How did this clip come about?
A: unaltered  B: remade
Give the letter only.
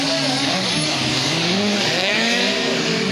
B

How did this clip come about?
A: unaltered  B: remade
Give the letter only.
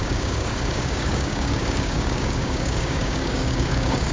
B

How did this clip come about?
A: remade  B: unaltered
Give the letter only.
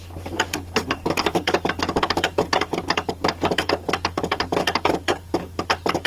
A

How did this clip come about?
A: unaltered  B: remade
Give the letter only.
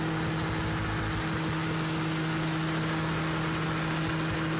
A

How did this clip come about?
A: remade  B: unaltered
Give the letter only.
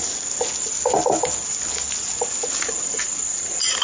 B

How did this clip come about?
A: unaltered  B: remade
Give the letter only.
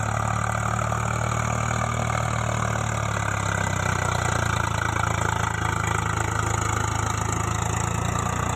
A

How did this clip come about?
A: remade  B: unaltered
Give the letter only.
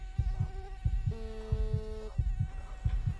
B